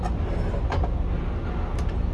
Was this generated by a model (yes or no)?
no